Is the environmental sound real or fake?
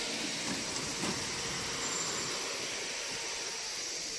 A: real